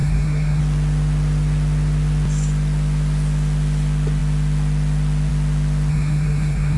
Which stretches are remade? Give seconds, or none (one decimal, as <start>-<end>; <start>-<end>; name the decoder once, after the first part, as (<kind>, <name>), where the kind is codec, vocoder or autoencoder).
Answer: 0.0-0.6 (codec, SNAC); 5.9-6.8